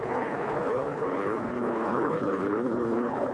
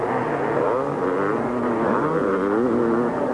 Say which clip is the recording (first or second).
second